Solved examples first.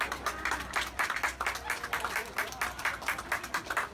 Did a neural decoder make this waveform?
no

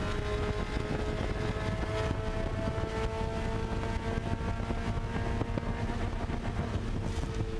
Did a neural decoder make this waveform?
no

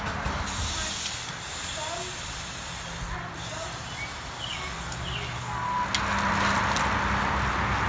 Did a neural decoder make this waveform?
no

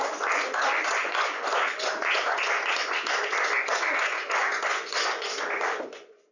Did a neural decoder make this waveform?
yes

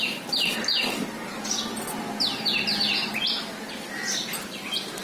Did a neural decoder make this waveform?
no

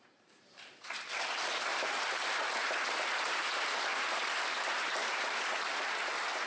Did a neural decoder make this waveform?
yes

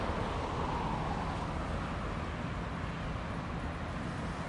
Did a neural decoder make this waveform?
no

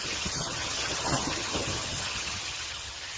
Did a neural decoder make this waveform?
yes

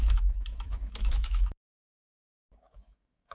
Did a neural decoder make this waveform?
yes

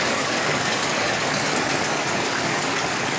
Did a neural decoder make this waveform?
yes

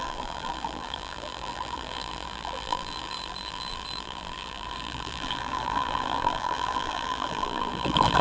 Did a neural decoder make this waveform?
yes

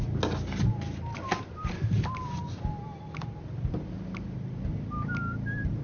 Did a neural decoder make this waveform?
no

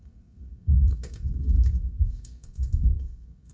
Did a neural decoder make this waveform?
yes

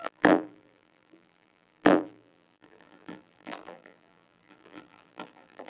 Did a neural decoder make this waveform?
yes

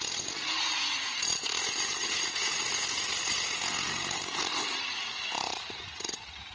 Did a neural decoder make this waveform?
yes